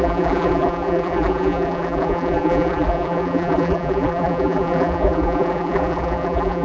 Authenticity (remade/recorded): remade